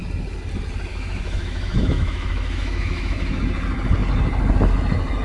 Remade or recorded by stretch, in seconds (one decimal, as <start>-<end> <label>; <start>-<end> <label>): 0.0-0.9 recorded; 0.9-3.4 remade; 3.4-5.2 recorded